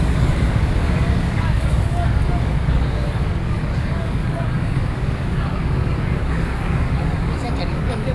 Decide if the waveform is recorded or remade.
remade